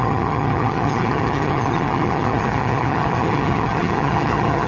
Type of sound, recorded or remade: remade